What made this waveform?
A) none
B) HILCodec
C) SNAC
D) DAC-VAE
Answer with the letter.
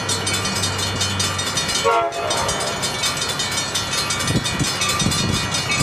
A